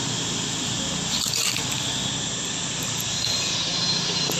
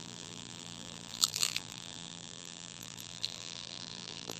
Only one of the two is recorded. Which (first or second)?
first